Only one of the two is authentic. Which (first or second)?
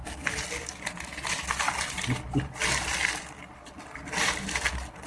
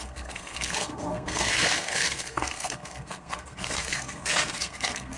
first